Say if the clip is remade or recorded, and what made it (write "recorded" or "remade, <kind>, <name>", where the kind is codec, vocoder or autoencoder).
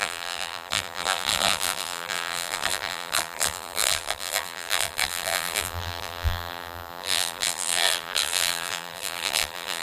remade, vocoder, BigVGAN v2